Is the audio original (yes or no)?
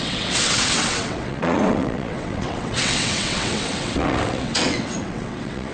no